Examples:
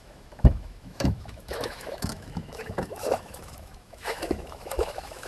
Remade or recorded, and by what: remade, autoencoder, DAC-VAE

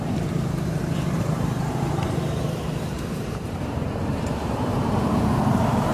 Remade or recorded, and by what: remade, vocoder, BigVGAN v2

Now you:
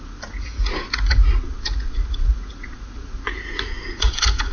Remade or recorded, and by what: remade, vocoder, Vocos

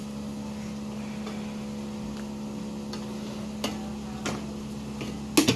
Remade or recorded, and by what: recorded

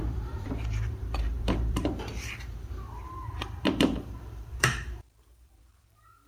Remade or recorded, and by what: remade, vocoder, BigVGAN v2